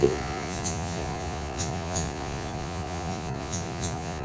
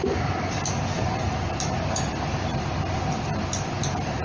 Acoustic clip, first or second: second